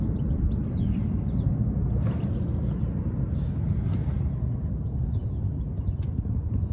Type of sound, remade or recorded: recorded